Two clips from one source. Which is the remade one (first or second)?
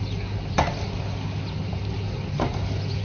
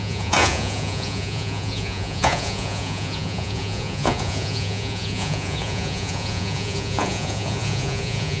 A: second